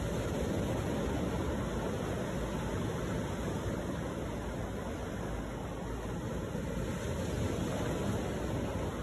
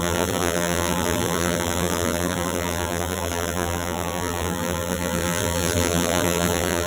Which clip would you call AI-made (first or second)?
second